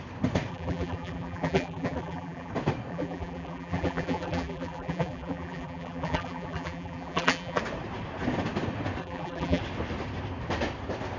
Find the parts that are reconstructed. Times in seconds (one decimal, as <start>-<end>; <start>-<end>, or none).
0.5-2.5; 2.9-7.6; 9.0-9.6